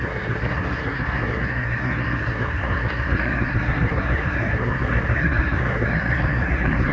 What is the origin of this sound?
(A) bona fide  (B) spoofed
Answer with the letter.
B